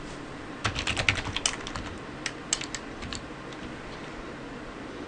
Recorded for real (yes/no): yes